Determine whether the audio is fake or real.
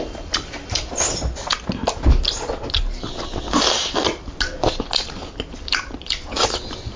real